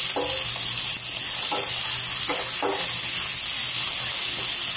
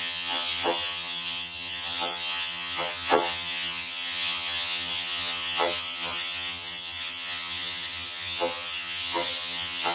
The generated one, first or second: second